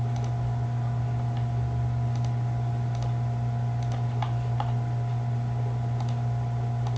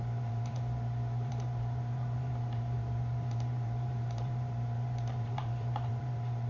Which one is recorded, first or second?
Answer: first